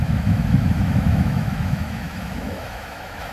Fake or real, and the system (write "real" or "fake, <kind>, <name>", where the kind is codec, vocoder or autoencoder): fake, autoencoder, DAC-VAE